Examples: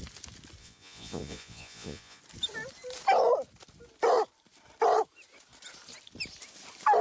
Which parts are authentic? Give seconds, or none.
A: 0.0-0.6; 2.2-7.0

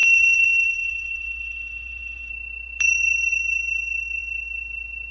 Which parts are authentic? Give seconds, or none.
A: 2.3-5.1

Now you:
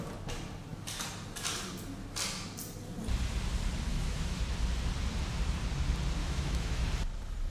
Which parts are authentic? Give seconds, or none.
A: 0.0-3.9; 4.4-6.2; 6.8-7.5

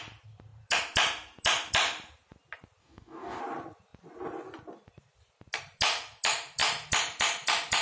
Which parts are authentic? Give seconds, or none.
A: 0.0-2.8; 3.4-7.8

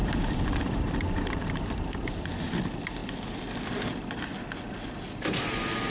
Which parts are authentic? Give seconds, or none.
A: 2.1-5.9

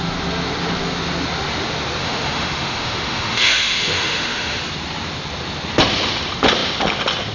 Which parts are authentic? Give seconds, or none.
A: 0.0-2.0; 4.6-7.3

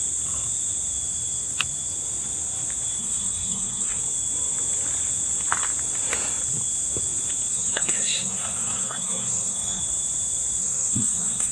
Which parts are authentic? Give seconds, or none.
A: 0.0-3.0; 4.0-7.5; 9.8-10.6